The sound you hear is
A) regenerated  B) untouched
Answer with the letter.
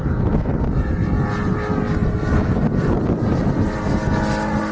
B